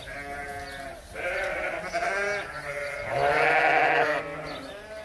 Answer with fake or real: real